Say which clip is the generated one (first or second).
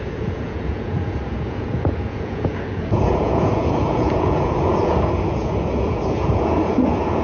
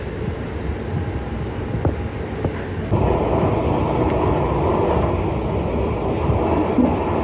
first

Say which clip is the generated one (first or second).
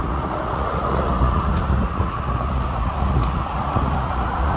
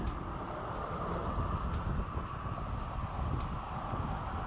first